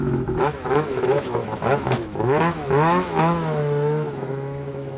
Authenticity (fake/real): fake